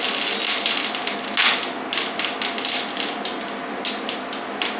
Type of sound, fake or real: real